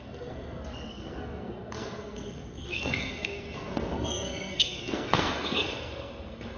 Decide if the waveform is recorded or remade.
remade